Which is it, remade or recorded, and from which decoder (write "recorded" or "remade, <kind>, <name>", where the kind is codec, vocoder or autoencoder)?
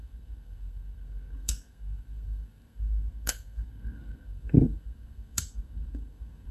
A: remade, codec, SNAC